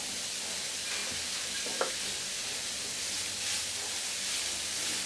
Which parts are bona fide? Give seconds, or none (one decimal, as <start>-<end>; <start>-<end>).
0.0-5.1